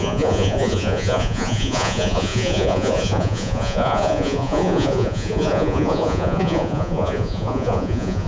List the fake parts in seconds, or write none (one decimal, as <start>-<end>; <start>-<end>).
0.0-8.3